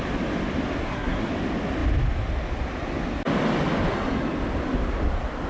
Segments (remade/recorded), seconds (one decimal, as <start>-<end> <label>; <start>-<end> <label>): 0.0-0.8 recorded; 0.8-1.3 remade; 1.3-5.5 recorded